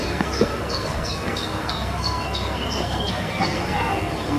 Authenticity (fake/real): fake